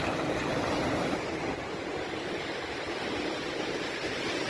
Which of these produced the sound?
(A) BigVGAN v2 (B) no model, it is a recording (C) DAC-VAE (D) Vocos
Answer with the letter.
B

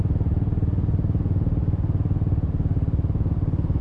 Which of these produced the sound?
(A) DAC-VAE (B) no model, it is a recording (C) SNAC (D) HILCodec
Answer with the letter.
B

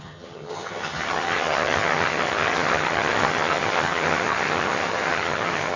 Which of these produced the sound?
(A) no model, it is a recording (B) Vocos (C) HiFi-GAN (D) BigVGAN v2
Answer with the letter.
C